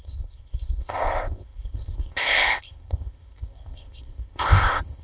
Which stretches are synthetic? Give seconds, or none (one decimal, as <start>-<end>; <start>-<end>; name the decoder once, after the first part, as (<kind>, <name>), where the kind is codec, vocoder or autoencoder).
0.0-5.0 (codec, ZipCodec)